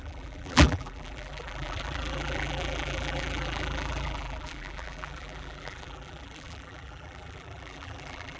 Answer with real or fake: fake